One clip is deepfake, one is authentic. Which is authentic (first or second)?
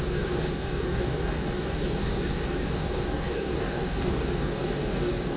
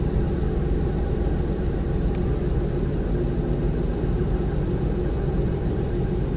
second